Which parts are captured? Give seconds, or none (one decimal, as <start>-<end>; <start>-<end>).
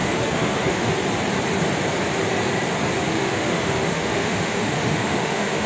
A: 0.9-3.1